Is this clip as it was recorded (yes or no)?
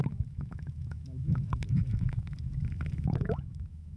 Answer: no